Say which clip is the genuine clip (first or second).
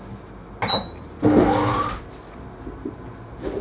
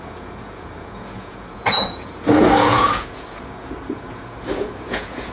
first